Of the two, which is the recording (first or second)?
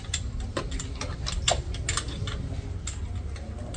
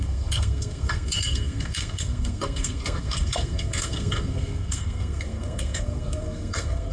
first